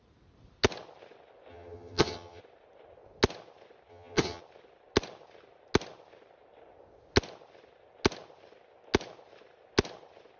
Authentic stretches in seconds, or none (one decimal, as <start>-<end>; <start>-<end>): 0.0-1.5; 2.4-3.9; 4.4-10.4